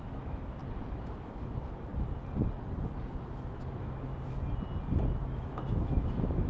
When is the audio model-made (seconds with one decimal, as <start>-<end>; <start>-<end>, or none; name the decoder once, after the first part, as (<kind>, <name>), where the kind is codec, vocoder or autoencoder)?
0.0-0.6 (autoencoder, DAC-VAE); 1.1-1.9; 3.2-4.1; 5.2-6.5